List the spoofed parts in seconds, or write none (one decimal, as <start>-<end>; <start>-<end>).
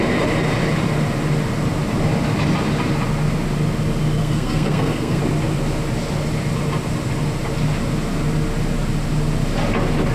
4.2-5.2